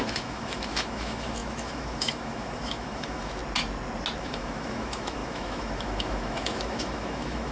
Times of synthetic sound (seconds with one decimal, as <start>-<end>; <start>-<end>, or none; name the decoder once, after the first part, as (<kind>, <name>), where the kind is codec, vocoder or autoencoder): 0.0-3.4 (autoencoder, DAC-VAE); 4.2-7.5